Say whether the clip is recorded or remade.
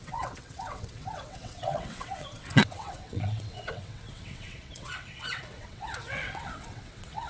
remade